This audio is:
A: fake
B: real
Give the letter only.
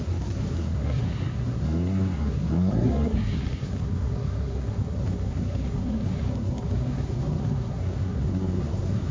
A